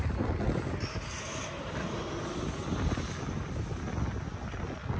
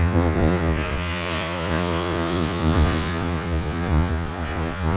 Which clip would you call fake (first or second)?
second